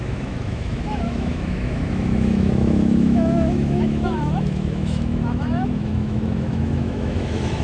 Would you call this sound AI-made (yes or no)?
yes